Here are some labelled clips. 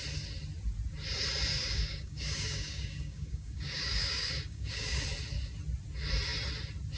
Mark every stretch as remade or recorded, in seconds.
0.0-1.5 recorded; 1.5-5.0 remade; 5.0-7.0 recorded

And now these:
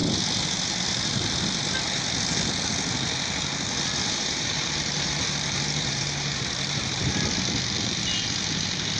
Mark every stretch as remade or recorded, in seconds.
0.0-4.0 recorded; 4.0-7.1 remade; 7.1-9.0 recorded

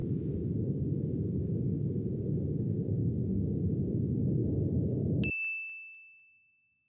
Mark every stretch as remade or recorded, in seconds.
0.0-6.9 recorded

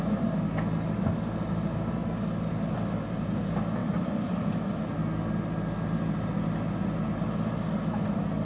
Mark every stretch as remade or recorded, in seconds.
0.0-3.8 recorded; 3.8-4.8 remade; 4.8-8.4 recorded

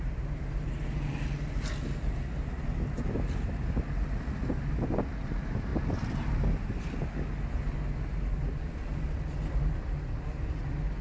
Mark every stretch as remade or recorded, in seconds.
0.0-11.0 recorded

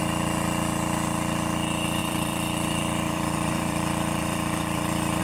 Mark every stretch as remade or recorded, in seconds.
0.0-2.0 recorded; 2.0-5.2 remade

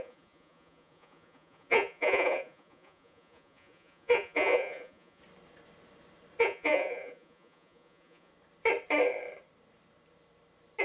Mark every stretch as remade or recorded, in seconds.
0.0-5.2 remade; 5.2-6.4 recorded; 6.4-8.3 remade; 8.3-10.8 recorded

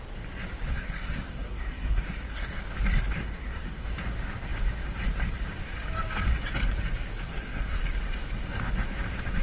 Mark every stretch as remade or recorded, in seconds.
0.0-0.7 recorded; 0.7-2.6 remade; 2.6-3.2 recorded; 3.2-3.9 remade; 3.9-7.3 recorded; 7.3-7.8 remade; 7.8-9.4 recorded